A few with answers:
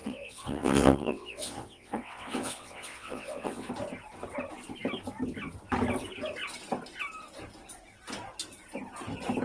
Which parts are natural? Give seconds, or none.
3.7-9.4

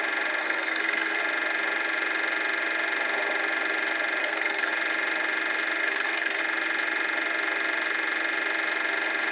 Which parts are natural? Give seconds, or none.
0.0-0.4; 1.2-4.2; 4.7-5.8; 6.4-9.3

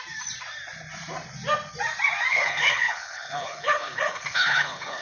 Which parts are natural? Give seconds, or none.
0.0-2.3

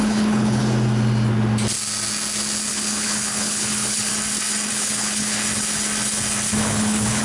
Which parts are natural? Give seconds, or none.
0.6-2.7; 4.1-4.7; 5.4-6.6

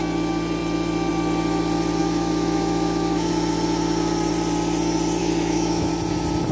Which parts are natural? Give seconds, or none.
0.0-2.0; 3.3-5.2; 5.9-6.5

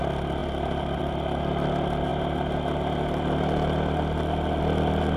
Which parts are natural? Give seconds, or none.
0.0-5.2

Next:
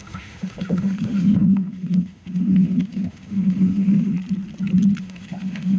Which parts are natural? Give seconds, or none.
4.1-5.0

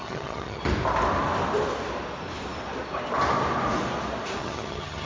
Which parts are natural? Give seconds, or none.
0.6-4.4